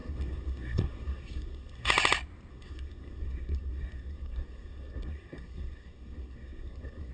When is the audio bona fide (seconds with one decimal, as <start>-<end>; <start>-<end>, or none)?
1.9-2.5